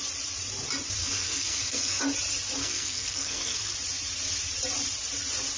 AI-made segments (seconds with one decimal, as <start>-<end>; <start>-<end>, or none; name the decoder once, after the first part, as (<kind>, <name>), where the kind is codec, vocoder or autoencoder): 1.0-2.0 (codec, SNAC); 2.6-3.7